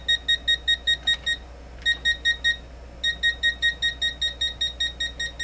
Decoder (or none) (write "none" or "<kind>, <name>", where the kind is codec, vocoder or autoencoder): none